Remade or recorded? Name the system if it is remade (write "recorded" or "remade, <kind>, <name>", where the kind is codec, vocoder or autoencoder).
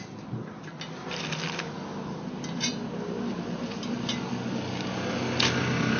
recorded